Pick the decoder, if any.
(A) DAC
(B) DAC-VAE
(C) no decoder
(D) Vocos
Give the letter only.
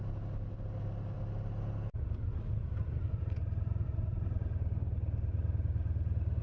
C